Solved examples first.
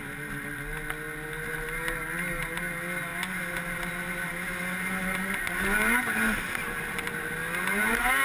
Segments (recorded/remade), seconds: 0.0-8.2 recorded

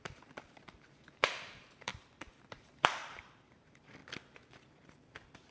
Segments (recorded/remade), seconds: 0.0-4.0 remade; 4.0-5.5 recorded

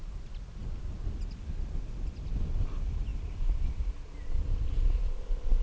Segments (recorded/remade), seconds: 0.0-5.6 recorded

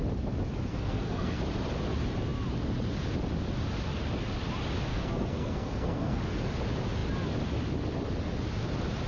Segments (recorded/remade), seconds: 0.0-0.7 recorded; 0.7-1.4 remade; 1.4-4.9 recorded; 4.9-6.2 remade; 6.2-9.1 recorded

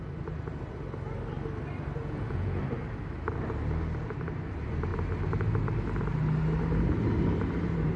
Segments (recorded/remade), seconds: 0.0-2.0 recorded; 2.0-2.6 remade; 2.6-8.0 recorded

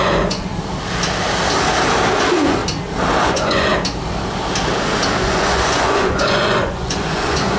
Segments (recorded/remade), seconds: 0.0-0.5 remade; 0.5-2.2 recorded; 2.2-2.6 remade; 2.6-3.2 recorded; 3.2-3.7 remade; 3.7-5.2 recorded; 5.2-7.6 remade

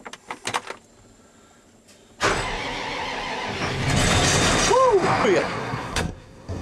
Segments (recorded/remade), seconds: 0.0-5.4 recorded; 5.4-6.6 remade

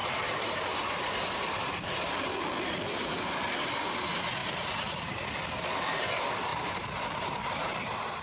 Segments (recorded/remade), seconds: 0.0-2.0 remade; 2.0-4.4 recorded; 4.4-5.3 remade; 5.3-6.5 recorded; 6.5-7.4 remade; 7.4-8.2 recorded